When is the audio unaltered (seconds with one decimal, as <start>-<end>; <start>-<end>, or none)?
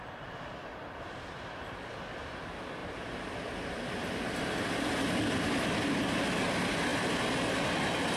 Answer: 0.0-2.8; 4.0-8.2